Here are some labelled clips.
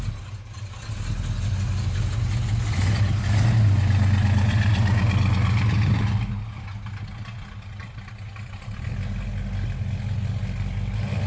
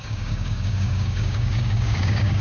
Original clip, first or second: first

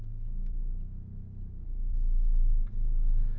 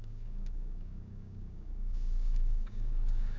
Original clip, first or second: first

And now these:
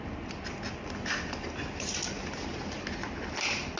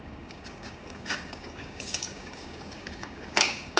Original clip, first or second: first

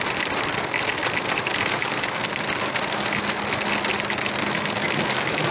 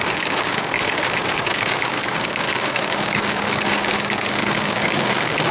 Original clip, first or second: first